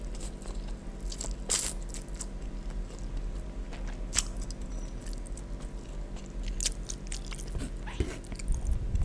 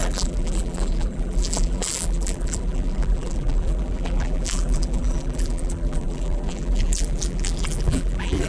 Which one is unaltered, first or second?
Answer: first